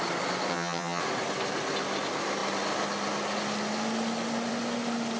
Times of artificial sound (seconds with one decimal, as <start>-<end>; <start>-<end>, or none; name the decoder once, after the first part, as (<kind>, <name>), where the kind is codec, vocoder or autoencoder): 0.5-1.0 (vocoder, HiFi-GAN)